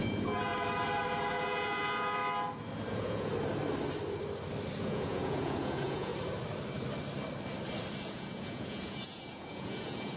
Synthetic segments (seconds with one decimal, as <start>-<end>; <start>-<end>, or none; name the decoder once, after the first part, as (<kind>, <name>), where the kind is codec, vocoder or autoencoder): 0.0-0.5 (vocoder, Vocos); 1.3-2.2; 2.9-3.3; 4.8-6.1; 8.1-10.2